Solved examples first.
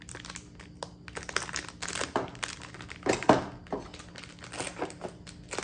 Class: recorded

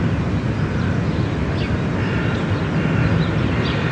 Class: recorded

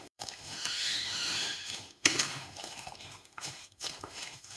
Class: remade